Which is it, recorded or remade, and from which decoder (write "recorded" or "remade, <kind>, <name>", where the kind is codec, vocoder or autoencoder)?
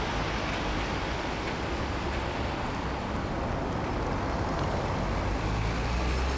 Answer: recorded